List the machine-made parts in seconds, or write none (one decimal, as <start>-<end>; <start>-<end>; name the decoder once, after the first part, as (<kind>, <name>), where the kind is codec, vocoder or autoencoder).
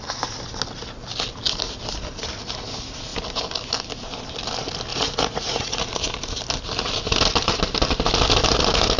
4.9-5.8 (vocoder, Vocos)